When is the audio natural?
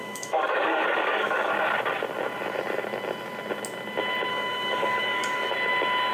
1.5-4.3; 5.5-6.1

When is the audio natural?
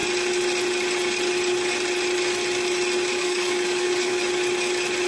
0.0-3.1; 4.1-5.1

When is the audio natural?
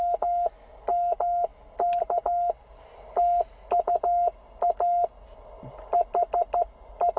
0.0-7.2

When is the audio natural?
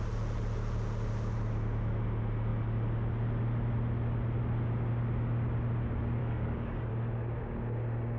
0.0-6.2; 6.9-8.2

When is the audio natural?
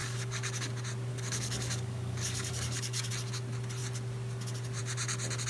0.7-1.1; 3.1-5.5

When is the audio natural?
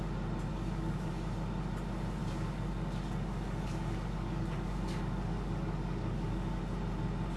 0.0-0.5; 1.1-2.2; 6.6-7.4